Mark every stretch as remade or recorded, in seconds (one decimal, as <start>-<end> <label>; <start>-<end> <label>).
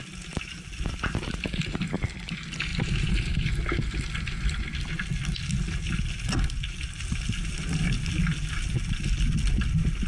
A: 0.0-10.1 recorded